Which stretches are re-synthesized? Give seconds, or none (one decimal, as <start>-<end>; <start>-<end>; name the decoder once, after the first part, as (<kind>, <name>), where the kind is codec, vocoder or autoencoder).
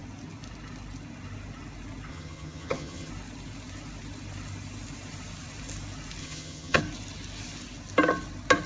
2.1-3.1 (vocoder, HiFi-GAN); 6.2-6.8